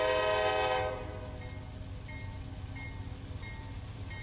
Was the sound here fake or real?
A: real